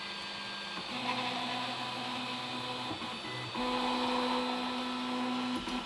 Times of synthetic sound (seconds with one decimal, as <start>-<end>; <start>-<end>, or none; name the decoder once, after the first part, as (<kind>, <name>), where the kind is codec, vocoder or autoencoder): none